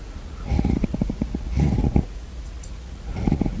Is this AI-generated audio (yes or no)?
yes